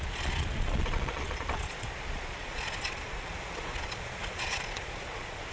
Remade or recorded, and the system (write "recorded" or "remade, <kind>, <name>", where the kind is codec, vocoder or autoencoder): remade, vocoder, Vocos